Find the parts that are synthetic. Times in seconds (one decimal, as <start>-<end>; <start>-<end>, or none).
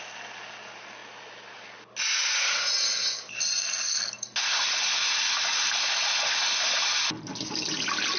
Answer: none